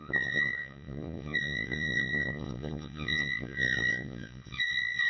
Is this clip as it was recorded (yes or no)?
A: no